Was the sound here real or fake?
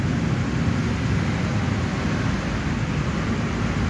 real